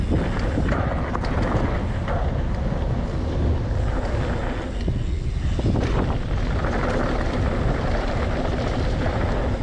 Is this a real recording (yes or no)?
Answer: yes